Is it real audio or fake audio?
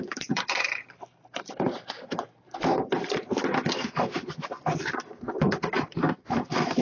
fake